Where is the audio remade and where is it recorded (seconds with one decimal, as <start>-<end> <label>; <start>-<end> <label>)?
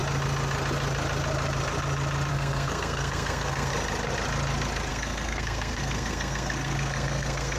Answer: 0.0-2.3 recorded; 2.3-3.7 remade; 3.7-4.9 recorded; 4.9-7.6 remade